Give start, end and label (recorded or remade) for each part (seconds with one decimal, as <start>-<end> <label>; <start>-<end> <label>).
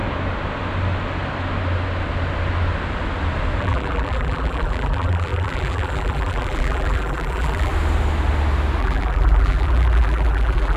0.0-3.6 recorded; 3.6-7.7 remade; 7.7-8.8 recorded; 8.8-10.8 remade